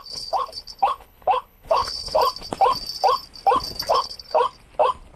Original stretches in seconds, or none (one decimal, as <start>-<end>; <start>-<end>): 2.2-3.9; 4.4-5.2